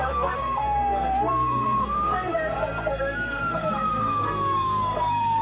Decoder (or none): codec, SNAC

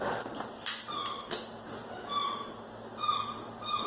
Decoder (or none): none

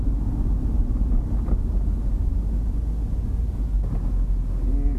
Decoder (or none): none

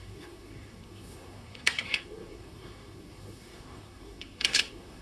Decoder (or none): codec, SNAC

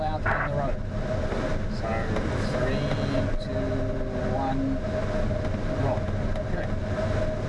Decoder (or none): none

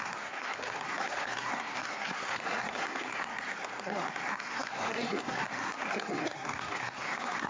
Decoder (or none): codec, SNAC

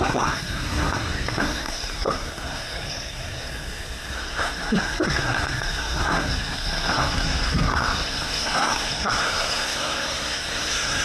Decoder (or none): codec, SNAC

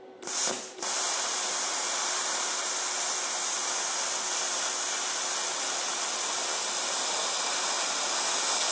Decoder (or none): none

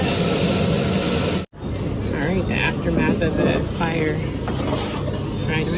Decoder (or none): none